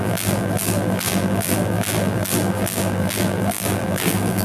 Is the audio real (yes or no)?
no